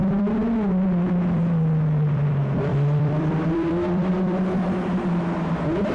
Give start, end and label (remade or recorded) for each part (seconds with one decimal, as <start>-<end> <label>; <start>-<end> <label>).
0.0-2.1 recorded; 2.1-4.6 remade; 4.6-5.9 recorded